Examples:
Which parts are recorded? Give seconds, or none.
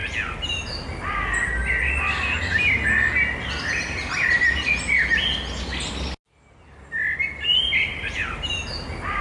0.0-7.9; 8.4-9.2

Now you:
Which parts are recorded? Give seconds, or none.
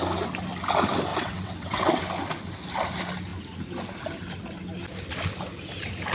0.0-1.1; 2.0-6.1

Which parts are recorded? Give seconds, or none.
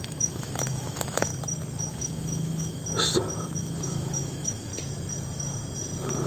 1.3-1.9; 2.8-3.6; 4.7-6.3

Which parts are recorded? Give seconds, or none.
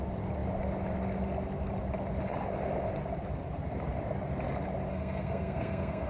0.0-4.9